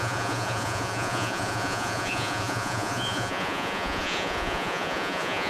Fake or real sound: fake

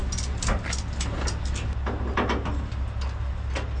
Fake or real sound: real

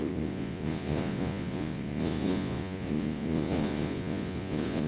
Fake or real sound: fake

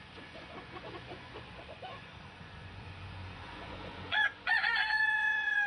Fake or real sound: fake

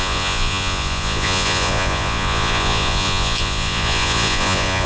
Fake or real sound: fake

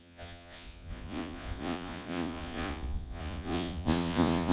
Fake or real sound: fake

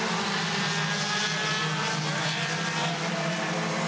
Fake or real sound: real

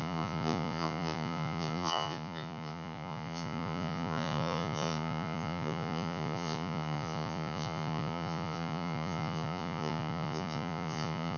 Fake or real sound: fake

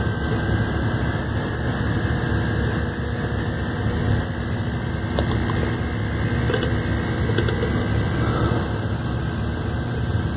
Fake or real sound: real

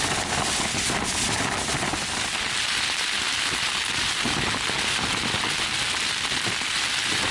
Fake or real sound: real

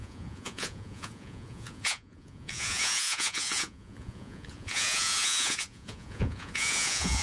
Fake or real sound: fake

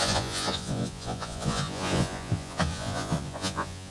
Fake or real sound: fake